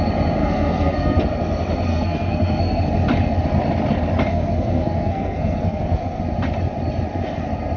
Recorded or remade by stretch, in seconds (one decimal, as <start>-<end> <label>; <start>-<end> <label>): 0.0-0.4 recorded; 0.4-1.2 remade; 1.2-1.9 recorded; 1.9-2.8 remade; 2.8-4.3 recorded; 4.3-6.2 remade; 6.2-7.8 recorded